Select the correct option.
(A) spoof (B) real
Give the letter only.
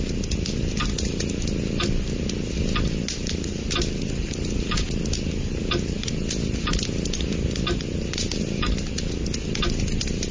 B